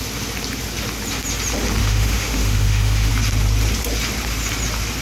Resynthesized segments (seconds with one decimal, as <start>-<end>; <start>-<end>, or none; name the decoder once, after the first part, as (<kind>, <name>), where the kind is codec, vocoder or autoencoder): 1.8-3.1 (autoencoder, DAC-VAE)